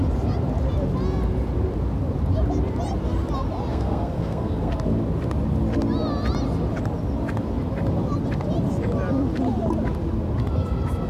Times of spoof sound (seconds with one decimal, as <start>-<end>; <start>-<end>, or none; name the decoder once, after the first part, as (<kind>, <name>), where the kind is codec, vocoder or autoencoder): 3.7-4.7 (codec, SNAC)